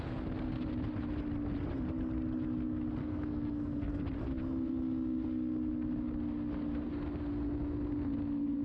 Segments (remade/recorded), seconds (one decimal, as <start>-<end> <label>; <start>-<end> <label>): 0.0-3.0 recorded; 3.0-4.0 remade; 4.0-8.6 recorded

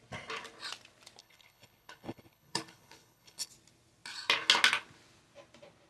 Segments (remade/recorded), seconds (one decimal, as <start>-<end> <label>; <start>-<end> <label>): 0.0-1.2 recorded; 1.2-3.5 remade; 3.5-5.9 recorded

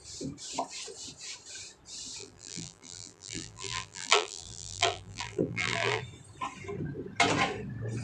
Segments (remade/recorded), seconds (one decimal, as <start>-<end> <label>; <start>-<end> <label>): 0.0-2.2 recorded; 2.2-6.0 remade; 6.0-8.0 recorded

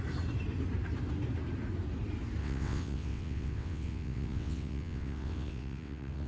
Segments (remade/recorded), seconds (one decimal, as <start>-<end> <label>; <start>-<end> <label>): 0.0-2.4 recorded; 2.4-6.3 remade